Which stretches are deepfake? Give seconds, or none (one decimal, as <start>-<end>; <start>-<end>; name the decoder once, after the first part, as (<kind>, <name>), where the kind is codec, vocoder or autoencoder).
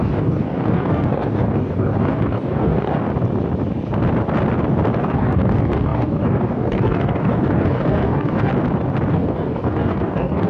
0.0-3.0 (codec, DAC); 5.0-8.5; 9.1-10.5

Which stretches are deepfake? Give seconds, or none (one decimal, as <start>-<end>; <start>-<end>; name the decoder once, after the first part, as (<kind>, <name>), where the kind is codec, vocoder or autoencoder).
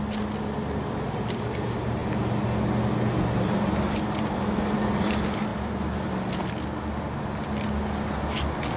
none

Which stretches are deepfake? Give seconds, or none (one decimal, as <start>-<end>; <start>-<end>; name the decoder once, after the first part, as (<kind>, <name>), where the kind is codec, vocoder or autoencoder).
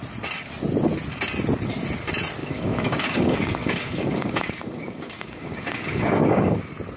2.4-6.6 (codec, DAC)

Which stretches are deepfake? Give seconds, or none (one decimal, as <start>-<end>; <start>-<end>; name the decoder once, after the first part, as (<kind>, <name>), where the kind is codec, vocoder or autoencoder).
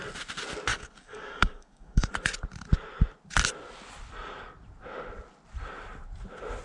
0.7-2.1 (codec, DAC)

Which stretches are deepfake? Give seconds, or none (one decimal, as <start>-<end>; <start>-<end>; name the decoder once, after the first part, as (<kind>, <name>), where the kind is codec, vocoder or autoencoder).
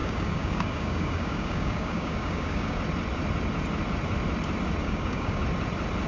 0.0-2.8 (codec, DAC); 4.8-5.4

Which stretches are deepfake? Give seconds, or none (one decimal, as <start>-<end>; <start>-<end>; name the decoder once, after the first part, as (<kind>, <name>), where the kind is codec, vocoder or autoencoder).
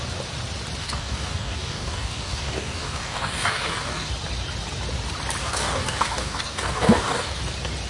0.8-4.1 (codec, DAC); 5.4-7.4